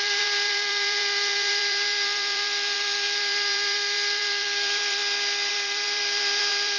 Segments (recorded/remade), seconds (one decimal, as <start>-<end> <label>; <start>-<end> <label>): 0.0-5.0 remade; 5.0-5.5 recorded; 5.5-6.8 remade